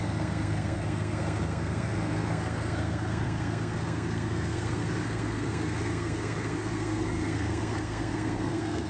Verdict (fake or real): fake